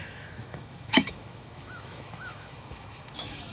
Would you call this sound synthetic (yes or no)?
yes